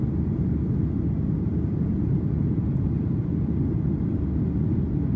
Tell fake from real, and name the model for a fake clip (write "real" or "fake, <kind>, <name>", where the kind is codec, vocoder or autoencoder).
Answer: real